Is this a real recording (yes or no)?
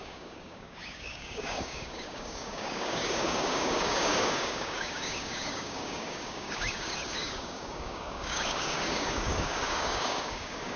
no